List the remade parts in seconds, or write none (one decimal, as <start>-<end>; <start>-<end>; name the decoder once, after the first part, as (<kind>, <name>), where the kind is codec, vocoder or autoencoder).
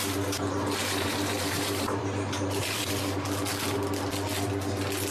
0.8-2.8 (vocoder, BigVGAN v2)